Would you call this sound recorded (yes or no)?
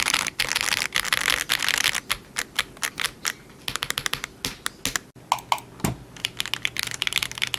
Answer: yes